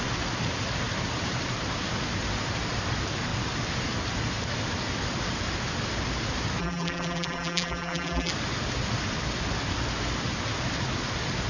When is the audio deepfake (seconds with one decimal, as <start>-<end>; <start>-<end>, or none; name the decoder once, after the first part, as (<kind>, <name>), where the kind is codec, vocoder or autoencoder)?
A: 6.6-8.3 (vocoder, BigVGAN v2)